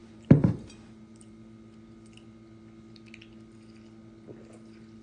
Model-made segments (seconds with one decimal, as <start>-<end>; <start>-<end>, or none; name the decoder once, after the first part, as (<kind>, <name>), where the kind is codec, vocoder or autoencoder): 0.0-1.3 (vocoder, BigVGAN v2)